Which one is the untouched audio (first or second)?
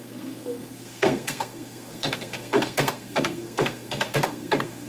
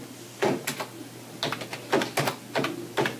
second